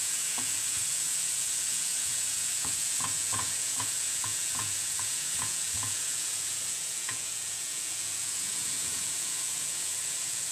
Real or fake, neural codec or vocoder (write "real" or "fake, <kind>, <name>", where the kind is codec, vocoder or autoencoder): fake, vocoder, Vocos